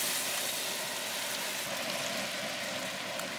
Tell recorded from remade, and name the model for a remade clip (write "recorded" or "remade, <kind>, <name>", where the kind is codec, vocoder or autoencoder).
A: recorded